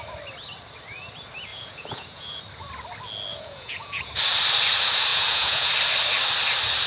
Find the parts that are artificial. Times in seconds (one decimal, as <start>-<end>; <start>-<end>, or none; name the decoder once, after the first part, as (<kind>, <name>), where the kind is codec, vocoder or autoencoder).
1.5-2.4 (vocoder, Vocos); 3.3-4.1; 5.1-5.7